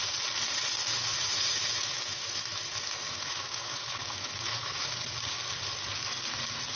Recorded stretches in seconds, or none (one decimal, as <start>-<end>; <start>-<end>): 0.0-0.8; 4.9-6.8